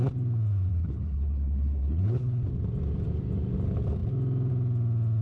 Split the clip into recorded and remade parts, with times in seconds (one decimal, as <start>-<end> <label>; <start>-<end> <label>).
0.0-0.7 recorded; 0.7-2.5 remade; 2.5-5.2 recorded